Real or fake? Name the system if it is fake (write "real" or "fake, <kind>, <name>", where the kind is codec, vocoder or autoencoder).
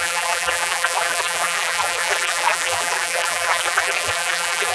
fake, vocoder, BigVGAN v2